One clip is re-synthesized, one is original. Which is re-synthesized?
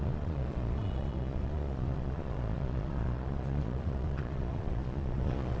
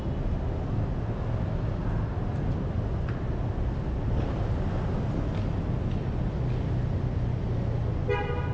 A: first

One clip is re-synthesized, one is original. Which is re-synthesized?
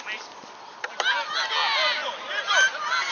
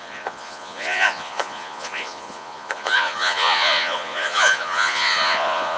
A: second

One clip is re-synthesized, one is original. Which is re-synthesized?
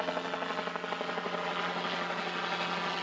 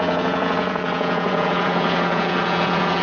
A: second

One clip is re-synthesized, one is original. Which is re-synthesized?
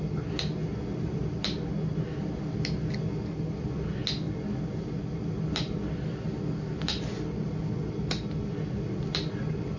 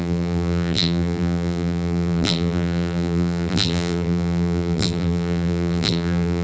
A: second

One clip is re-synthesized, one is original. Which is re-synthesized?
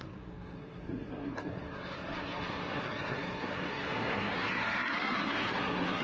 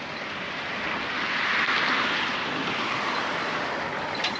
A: first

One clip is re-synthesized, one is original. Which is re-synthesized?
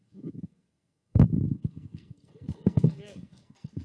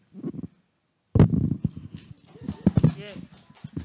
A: first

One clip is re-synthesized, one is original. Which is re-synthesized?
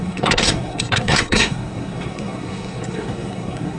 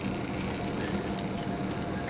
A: first